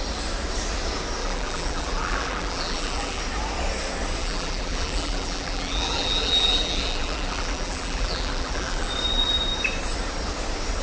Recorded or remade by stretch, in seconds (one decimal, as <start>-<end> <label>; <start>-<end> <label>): 0.0-1.2 recorded; 1.2-3.2 remade; 3.2-4.2 recorded; 4.2-8.9 remade; 8.9-10.8 recorded